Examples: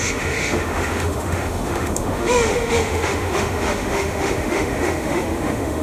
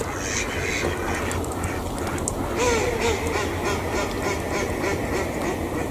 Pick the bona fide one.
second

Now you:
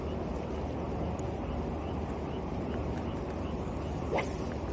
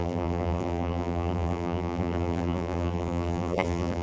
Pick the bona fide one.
first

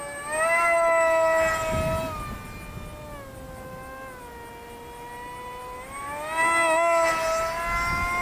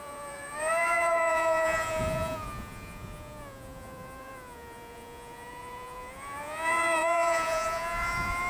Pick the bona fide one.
first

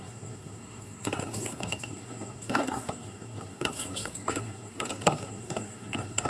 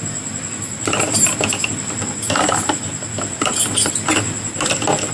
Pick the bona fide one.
second